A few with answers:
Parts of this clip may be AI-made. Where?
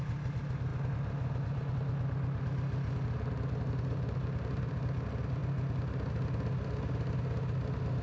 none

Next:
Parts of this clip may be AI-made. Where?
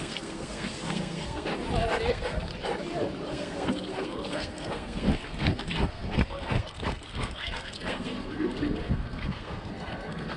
0.0-1.5 (codec, SNAC); 2.1-2.5; 3.3-10.4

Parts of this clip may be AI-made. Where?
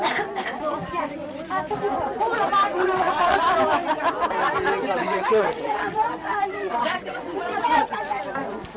2.7-3.4 (vocoder, WaveNeXt); 4.9-8.0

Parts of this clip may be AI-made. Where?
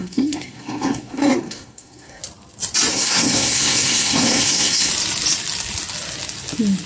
0.0-2.2 (codec, SNAC); 2.9-4.9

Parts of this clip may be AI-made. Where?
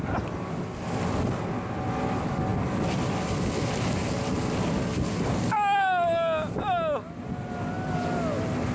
none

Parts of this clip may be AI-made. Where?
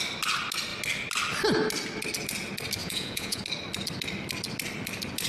2.8-3.4 (vocoder, Vocos)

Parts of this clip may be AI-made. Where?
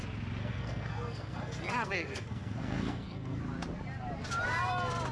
0.4-3.4 (codec, SNAC)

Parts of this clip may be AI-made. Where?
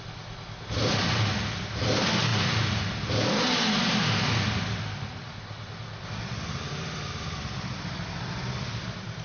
none